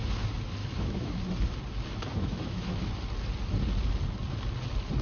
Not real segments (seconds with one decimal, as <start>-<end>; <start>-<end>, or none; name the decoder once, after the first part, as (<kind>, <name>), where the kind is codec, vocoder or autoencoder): 0.6-1.2 (autoencoder, DAC-VAE); 2.1-2.9